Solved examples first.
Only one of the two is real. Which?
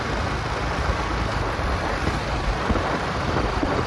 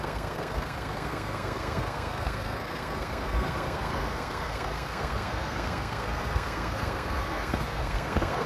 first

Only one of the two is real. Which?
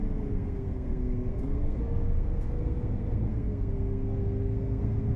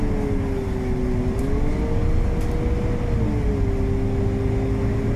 second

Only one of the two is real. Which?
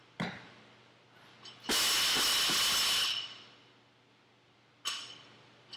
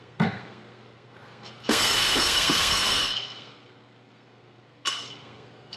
first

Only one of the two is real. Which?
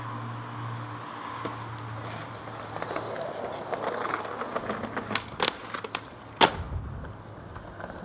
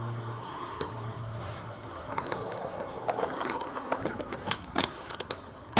first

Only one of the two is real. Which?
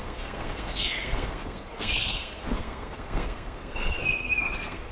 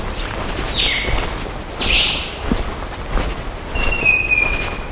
second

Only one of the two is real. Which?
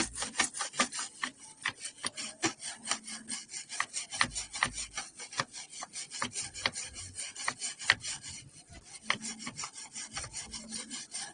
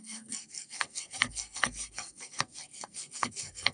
first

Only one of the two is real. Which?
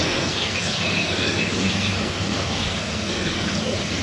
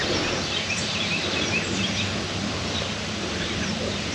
second